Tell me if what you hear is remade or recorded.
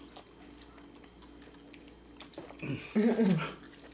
recorded